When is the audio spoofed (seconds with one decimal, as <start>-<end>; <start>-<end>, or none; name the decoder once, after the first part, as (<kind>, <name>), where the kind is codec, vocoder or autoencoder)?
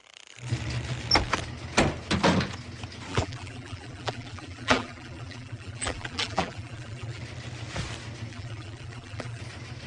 3.1-7.2 (vocoder, BigVGAN v2); 8.3-9.4